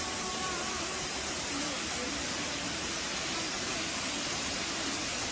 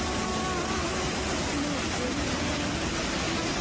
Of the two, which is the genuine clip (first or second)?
second